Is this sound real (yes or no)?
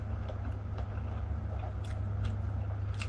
yes